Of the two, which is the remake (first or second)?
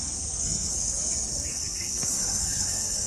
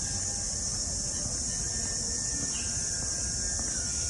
first